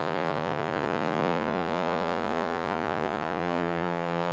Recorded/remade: remade